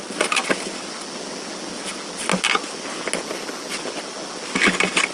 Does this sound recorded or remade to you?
recorded